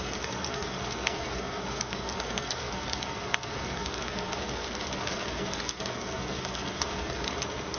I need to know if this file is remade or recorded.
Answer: remade